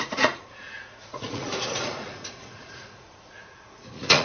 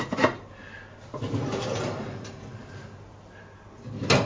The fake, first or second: first